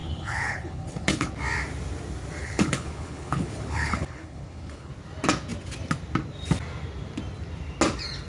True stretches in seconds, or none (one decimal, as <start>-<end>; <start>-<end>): 1.3-2.4; 4.9-8.3